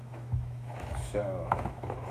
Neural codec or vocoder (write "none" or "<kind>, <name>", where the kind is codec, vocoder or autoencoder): autoencoder, DAC-VAE